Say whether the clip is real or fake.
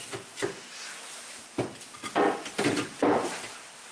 real